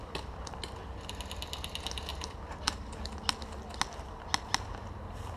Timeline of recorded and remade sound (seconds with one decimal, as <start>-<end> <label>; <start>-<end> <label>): 0.0-5.4 recorded